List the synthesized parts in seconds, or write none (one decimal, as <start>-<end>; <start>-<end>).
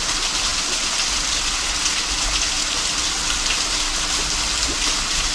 none